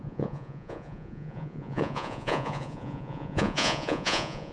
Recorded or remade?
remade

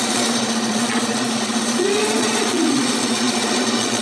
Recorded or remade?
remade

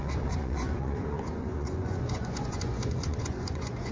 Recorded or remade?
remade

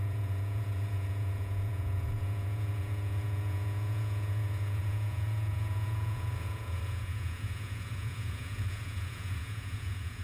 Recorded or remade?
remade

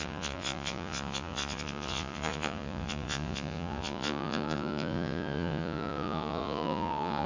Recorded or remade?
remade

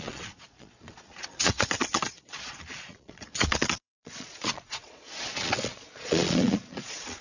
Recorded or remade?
remade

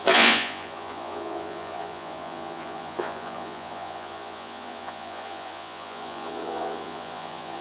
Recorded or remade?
remade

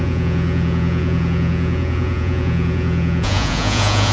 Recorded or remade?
remade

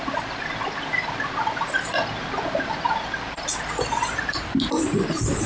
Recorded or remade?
recorded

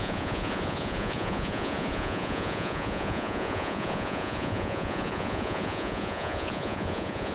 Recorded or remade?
remade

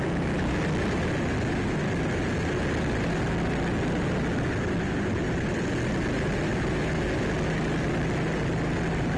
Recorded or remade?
recorded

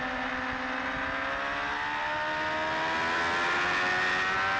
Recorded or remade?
recorded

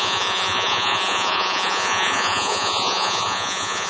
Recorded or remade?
remade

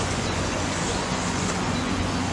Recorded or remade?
remade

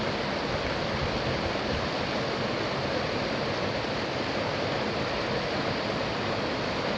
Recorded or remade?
recorded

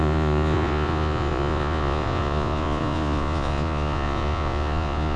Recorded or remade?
remade